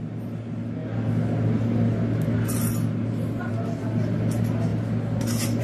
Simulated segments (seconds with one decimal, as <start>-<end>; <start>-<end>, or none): none